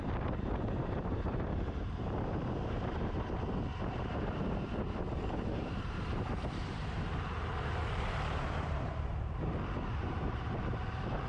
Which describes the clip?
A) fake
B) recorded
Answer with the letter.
A